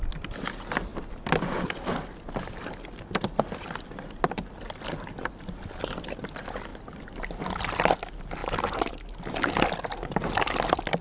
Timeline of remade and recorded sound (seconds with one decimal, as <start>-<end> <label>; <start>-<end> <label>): 0.0-11.0 recorded